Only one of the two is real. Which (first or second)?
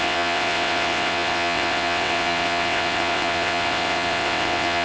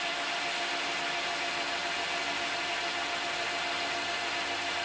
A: second